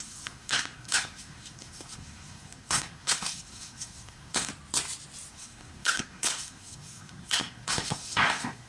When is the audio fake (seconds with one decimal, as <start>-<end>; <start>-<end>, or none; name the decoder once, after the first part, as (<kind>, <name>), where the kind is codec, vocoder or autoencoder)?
0.0-4.5 (codec, SNAC); 5.3-8.7

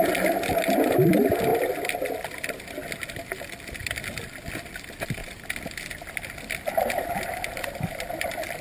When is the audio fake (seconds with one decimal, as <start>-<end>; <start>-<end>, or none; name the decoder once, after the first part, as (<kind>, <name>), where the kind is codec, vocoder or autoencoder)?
none